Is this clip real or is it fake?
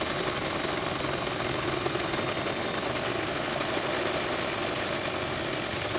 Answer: real